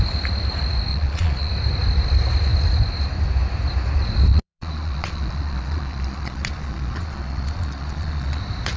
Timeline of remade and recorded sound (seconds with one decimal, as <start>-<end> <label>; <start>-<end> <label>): 0.0-0.9 recorded; 0.9-1.5 remade; 1.5-4.3 recorded; 4.3-8.4 remade; 8.4-8.8 recorded